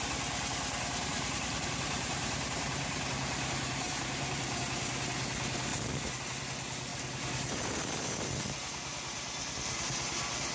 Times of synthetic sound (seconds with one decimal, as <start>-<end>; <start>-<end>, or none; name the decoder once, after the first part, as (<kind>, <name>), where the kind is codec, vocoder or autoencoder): 1.0-4.6 (vocoder, BigVGAN v2)